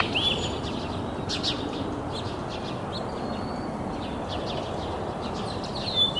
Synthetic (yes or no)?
no